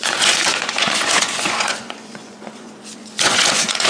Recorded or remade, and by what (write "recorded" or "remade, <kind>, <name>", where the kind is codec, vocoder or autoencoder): remade, vocoder, Vocos